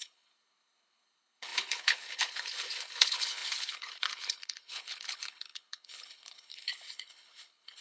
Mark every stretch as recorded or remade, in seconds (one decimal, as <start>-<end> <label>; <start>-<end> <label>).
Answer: 0.0-7.8 remade